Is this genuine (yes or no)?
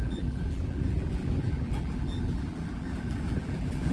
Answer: no